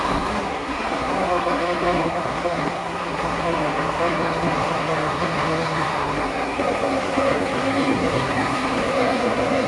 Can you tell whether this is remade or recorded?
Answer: remade